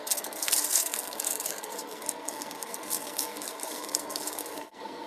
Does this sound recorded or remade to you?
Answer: remade